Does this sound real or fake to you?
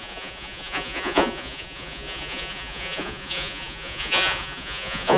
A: fake